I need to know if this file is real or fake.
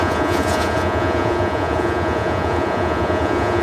fake